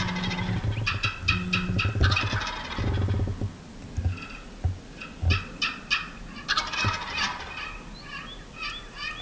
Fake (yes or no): no